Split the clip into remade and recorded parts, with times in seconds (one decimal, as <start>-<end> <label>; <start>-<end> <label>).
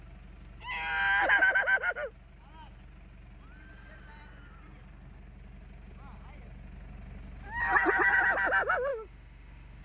0.0-8.9 recorded; 8.9-9.8 remade